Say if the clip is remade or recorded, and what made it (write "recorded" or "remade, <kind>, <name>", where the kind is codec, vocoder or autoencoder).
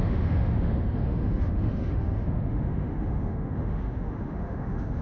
remade, autoencoder, DAC-VAE